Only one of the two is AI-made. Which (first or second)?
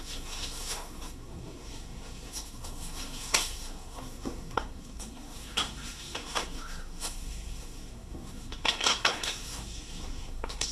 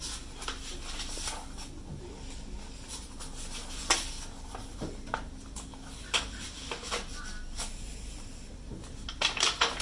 first